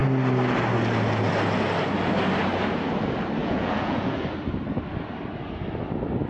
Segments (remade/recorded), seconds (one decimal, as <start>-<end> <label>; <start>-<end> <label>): 0.0-3.4 recorded; 3.4-4.2 remade; 4.2-6.3 recorded